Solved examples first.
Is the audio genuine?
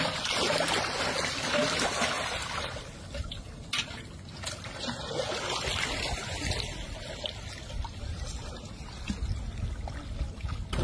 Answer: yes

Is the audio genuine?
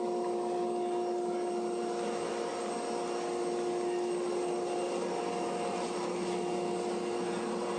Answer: yes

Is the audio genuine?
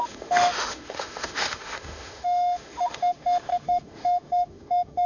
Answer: no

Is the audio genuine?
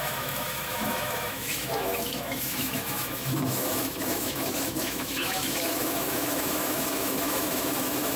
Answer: no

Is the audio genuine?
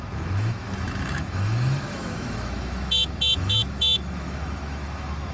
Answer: no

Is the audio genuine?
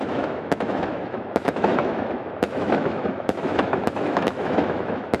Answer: no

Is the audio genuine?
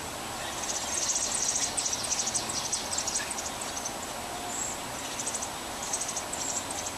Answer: yes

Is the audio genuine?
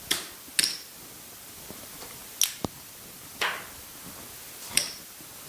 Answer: yes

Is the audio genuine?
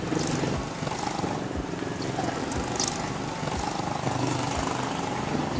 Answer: yes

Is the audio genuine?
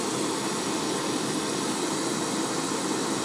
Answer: yes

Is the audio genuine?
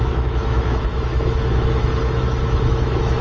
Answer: no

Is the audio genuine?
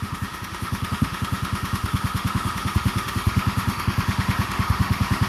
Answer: no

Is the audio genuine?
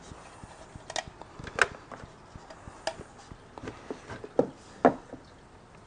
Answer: yes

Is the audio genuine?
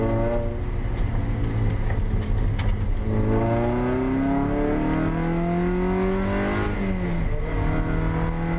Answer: yes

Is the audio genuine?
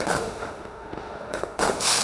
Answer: no